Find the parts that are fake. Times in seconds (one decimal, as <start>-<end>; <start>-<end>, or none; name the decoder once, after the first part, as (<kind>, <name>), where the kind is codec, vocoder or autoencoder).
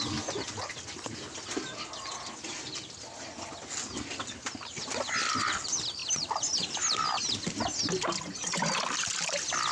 none